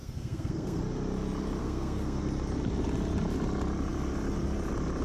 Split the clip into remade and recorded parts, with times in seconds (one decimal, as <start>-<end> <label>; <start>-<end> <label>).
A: 0.0-0.8 remade; 0.8-1.6 recorded; 1.6-2.2 remade; 2.2-5.0 recorded